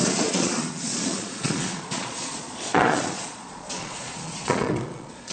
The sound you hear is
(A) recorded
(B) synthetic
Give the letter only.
B